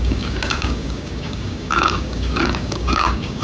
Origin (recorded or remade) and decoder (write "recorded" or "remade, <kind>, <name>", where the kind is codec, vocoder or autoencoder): remade, codec, DAC